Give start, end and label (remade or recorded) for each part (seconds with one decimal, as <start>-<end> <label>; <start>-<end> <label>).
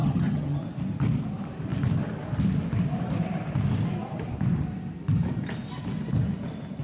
0.0-0.6 remade; 0.6-6.8 recorded